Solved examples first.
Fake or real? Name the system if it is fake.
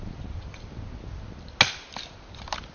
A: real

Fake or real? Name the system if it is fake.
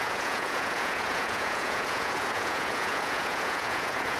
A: fake, vocoder, Vocos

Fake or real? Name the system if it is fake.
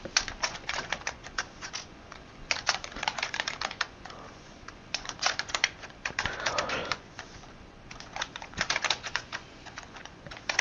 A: fake, vocoder, Vocos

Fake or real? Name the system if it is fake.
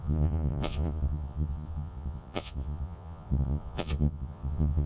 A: fake, vocoder, Vocos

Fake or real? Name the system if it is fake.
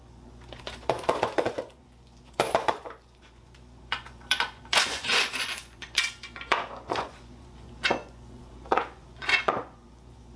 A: fake, vocoder, Vocos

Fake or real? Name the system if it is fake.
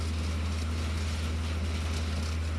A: real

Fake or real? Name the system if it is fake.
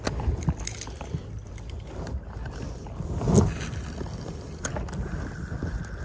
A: real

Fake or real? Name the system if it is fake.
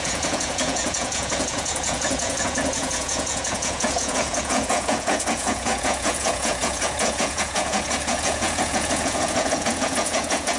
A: fake, vocoder, Vocos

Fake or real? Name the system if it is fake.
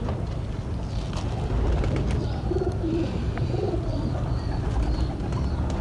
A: real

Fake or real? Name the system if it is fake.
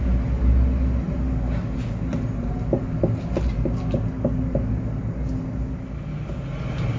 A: real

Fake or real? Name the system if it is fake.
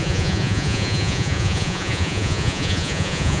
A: fake, vocoder, Vocos